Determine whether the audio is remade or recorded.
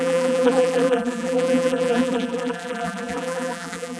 remade